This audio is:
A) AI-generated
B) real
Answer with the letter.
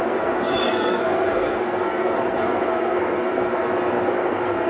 A